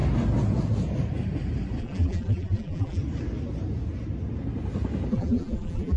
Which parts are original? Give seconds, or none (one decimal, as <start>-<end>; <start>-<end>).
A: 0.0-1.8; 3.0-5.1